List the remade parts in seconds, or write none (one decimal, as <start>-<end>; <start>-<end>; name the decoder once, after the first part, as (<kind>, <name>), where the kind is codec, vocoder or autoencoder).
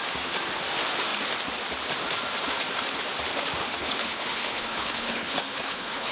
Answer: 3.6-6.1 (codec, HILCodec)